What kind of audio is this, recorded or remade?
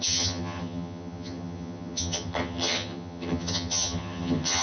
remade